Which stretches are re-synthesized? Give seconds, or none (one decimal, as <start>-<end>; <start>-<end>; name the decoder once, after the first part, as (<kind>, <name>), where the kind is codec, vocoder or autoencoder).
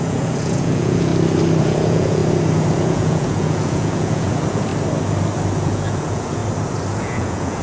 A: 0.0-1.1 (vocoder, Vocos); 1.6-2.2; 2.7-4.7; 5.6-6.4; 7.0-7.6